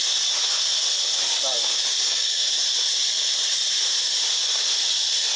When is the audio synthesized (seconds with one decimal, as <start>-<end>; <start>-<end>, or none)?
1.9-2.5